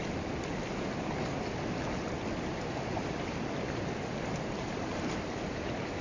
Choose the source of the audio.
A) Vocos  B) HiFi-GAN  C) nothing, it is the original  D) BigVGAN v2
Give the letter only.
C